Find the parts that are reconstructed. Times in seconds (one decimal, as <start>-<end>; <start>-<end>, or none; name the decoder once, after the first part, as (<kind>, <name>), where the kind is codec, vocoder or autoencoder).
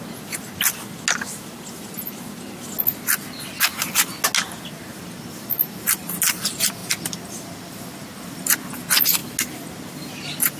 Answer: none